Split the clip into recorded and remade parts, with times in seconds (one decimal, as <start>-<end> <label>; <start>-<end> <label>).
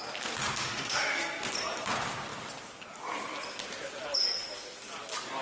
0.0-0.6 recorded; 0.6-1.2 remade; 1.2-5.4 recorded